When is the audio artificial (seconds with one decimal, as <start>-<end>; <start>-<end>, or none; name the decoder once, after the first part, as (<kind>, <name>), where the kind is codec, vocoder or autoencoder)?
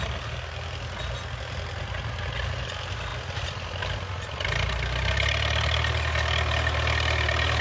none